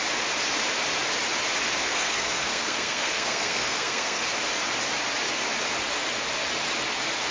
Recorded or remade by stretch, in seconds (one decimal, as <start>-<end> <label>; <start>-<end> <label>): 0.0-1.8 recorded; 1.8-4.2 remade; 4.2-7.3 recorded